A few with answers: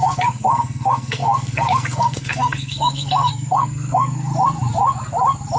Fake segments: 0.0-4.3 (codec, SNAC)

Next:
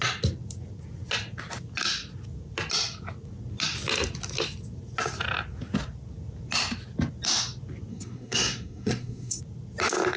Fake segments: 7.9-9.4 (codec, SNAC)

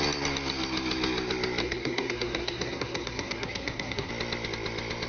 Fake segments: 1.6-4.1 (codec, SNAC)

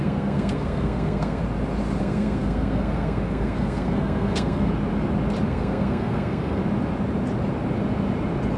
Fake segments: 0.0-1.4 (codec, SNAC); 2.0-4.7; 5.5-6.6

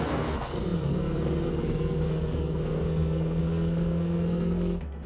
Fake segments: 0.0-5.1 (codec, SNAC)

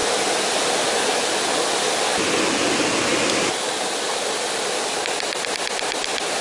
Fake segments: none

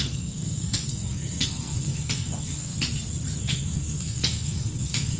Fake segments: 0.0-2.7 (codec, SNAC); 3.4-5.2

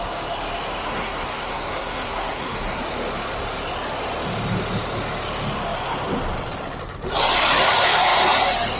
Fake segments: 0.8-2.8 (codec, SNAC)